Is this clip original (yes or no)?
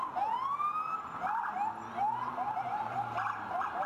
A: yes